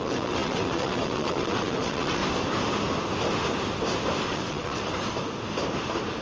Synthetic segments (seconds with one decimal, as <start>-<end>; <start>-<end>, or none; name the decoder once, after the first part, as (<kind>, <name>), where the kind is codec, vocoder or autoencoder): 0.0-2.2 (vocoder, WaveNeXt); 4.3-4.9